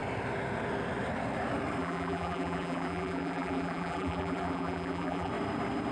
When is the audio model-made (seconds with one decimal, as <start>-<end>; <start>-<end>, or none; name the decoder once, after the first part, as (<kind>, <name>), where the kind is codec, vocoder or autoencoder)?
1.8-5.3 (vocoder, BigVGAN v2)